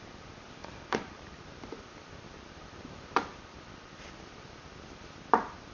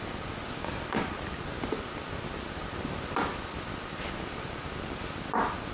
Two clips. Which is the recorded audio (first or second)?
second